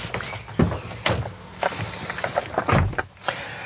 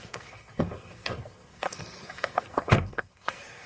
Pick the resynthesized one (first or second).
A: second